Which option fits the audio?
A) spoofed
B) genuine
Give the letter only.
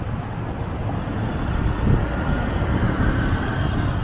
B